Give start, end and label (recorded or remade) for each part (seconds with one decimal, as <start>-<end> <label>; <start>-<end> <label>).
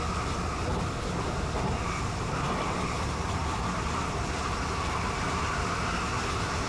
0.0-6.7 recorded